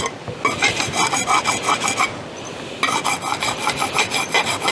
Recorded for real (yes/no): yes